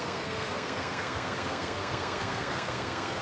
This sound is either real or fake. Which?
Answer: fake